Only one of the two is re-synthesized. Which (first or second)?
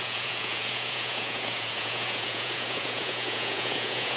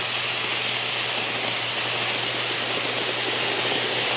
first